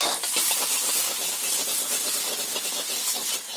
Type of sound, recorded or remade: recorded